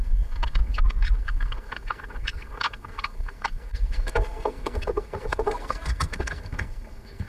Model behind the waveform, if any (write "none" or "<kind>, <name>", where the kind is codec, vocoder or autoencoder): codec, SNAC